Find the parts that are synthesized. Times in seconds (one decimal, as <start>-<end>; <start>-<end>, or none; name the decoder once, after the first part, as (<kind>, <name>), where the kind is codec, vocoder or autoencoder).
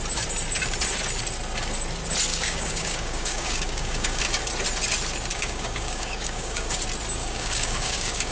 2.3-4.2 (codec, DAC); 5.3-6.8; 7.2-8.3